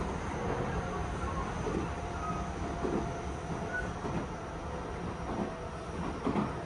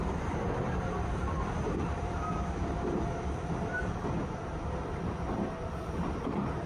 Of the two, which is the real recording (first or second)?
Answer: first